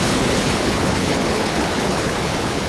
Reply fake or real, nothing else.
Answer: fake